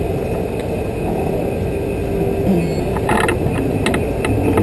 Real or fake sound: real